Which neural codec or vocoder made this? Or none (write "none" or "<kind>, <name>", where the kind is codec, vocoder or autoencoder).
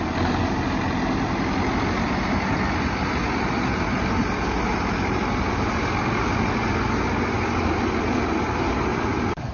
none